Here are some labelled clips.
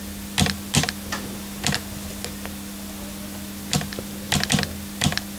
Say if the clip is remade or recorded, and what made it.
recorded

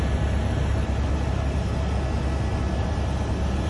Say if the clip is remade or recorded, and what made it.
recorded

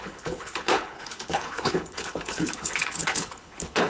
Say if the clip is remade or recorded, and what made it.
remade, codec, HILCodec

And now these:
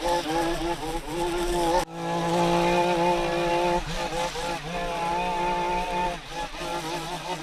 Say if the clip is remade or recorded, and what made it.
recorded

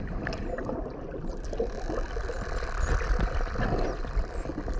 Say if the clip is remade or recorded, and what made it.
recorded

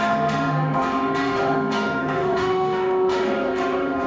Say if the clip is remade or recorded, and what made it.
remade, autoencoder, DAC-VAE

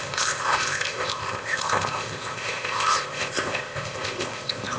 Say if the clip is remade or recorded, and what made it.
remade, codec, ZipCodec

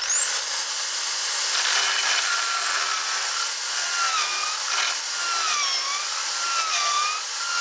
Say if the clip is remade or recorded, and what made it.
recorded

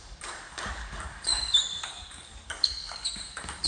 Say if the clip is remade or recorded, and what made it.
remade, codec, DAC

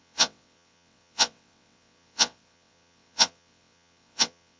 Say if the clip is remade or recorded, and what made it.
remade, vocoder, WaveNeXt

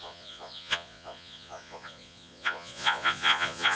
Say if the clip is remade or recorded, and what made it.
remade, vocoder, Vocos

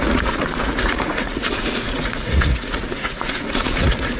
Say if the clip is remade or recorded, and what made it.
remade, vocoder, Vocos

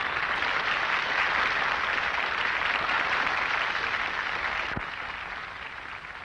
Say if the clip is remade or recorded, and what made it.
recorded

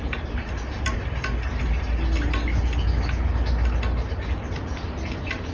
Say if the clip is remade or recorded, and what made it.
recorded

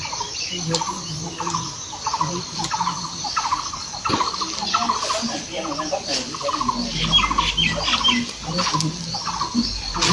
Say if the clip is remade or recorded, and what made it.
recorded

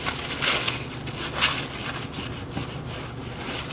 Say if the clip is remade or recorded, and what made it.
recorded